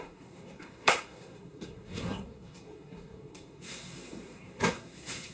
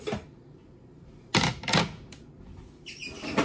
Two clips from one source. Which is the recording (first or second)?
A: second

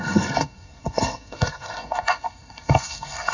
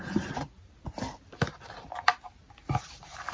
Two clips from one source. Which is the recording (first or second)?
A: second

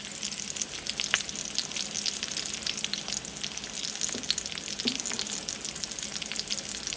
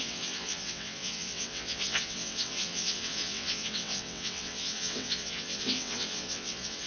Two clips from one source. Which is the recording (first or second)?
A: first